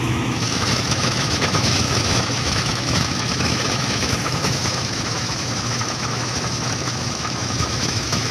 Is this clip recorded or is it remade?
remade